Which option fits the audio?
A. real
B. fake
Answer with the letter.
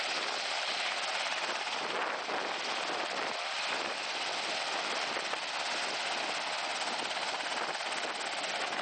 A